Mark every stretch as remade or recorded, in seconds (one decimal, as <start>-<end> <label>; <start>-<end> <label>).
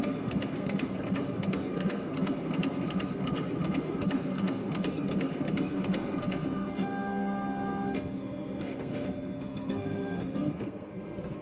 0.0-11.4 remade